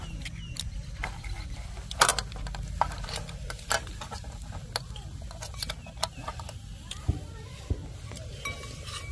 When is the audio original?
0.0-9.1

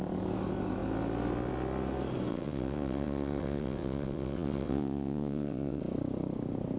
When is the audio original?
0.0-2.3; 5.8-6.8